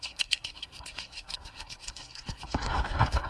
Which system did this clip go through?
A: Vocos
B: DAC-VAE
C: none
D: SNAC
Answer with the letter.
D